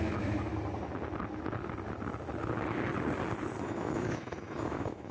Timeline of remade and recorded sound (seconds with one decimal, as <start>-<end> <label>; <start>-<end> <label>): 0.0-0.5 remade; 0.5-3.6 recorded; 3.6-5.1 remade